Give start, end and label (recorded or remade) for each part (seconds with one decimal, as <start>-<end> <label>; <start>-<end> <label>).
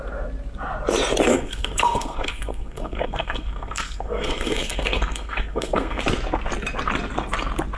0.0-1.3 recorded; 1.3-6.0 remade; 6.0-7.8 recorded